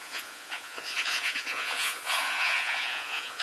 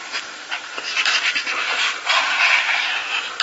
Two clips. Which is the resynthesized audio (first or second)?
first